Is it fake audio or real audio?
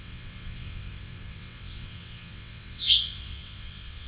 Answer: fake